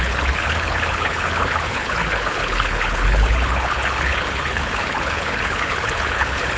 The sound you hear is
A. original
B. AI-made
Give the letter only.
B